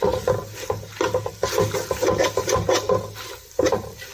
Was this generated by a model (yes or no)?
no